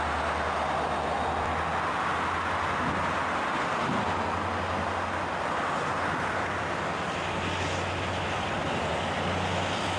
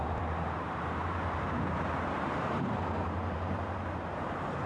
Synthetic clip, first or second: second